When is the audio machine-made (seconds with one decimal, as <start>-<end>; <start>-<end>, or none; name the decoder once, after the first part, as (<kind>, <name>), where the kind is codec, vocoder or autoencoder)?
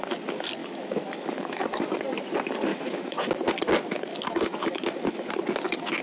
0.6-1.8 (autoencoder, DAC-VAE); 2.7-3.2; 4.1-5.3